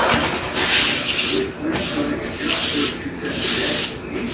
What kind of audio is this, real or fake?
real